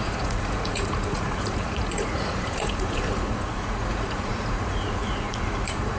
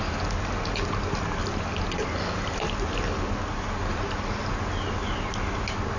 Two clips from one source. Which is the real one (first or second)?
second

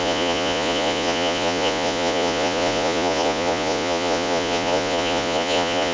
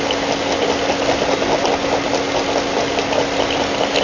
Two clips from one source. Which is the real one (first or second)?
second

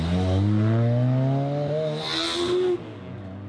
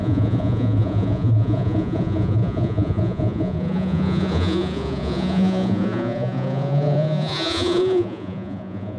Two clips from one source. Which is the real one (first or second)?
first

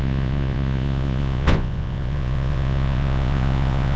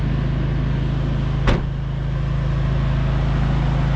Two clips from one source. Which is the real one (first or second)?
second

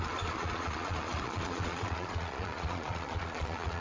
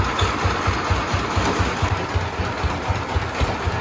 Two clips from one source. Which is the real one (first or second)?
second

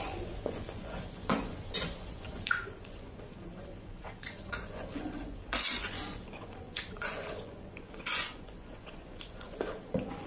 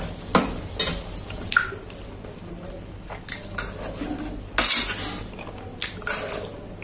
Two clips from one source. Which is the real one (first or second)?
second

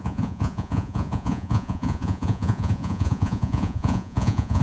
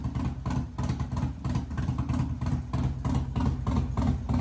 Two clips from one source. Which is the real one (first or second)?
second